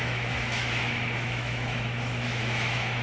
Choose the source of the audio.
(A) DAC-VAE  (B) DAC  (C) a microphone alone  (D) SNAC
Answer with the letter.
A